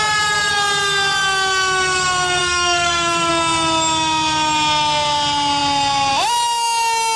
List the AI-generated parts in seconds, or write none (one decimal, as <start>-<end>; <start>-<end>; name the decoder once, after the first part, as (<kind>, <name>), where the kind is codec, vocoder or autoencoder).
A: 2.4-3.3 (codec, SNAC)